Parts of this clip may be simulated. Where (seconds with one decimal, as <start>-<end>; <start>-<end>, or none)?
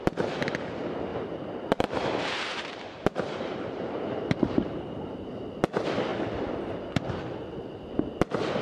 1.1-5.0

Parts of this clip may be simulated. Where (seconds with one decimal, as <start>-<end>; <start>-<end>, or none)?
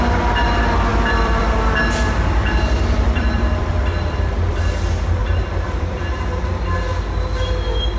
0.9-4.6; 5.2-6.1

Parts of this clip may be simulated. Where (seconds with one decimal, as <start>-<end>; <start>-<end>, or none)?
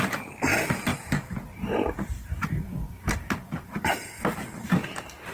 0.9-4.1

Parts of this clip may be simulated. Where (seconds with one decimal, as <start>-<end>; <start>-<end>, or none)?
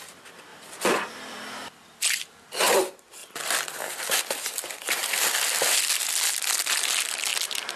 0.5-2.8; 5.0-5.7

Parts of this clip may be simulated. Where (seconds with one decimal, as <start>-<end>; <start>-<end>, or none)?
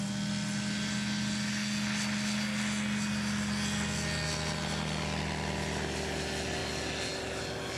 none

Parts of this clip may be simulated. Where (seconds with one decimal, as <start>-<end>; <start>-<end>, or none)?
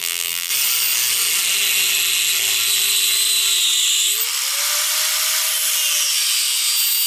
0.0-0.5